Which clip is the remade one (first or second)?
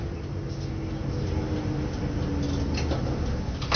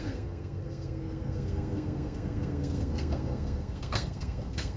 second